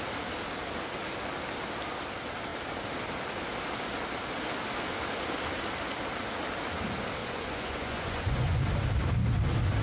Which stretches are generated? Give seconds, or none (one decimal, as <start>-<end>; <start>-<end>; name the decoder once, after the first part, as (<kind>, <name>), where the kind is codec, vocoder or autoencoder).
7.2-8.6 (vocoder, Vocos)